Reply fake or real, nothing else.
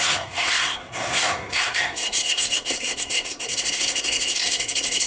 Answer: fake